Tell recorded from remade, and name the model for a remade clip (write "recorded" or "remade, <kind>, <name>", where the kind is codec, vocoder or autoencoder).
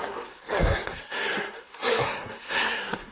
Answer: remade, codec, SNAC